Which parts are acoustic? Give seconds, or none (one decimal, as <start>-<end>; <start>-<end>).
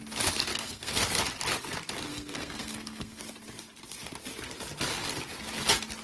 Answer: 0.0-0.5; 1.2-2.1; 3.2-6.0